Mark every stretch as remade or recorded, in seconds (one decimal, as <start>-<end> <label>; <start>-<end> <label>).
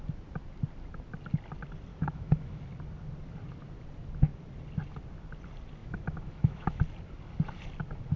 0.0-1.9 recorded; 1.9-2.6 remade; 2.6-5.8 recorded; 5.8-6.8 remade; 6.8-8.2 recorded